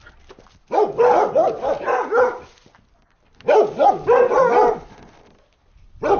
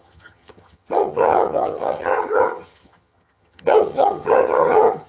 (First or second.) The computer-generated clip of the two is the second